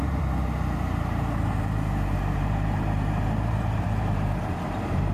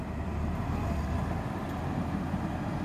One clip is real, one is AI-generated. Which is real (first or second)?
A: second